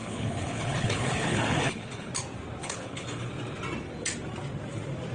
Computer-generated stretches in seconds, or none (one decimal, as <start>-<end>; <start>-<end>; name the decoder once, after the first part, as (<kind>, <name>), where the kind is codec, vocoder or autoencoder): 0.0-2.1 (codec, HILCodec); 2.6-3.3